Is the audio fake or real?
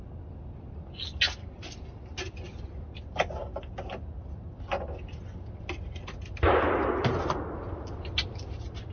real